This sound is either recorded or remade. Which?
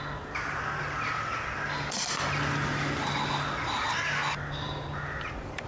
recorded